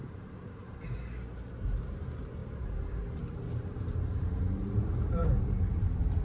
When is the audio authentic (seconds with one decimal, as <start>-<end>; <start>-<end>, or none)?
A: 0.6-1.5; 2.4-3.3